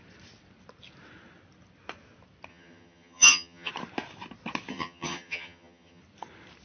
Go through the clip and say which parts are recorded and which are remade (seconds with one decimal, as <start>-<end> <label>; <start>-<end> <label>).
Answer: 0.0-2.5 recorded; 2.5-3.7 remade; 3.7-4.7 recorded; 4.7-6.0 remade; 6.0-6.6 recorded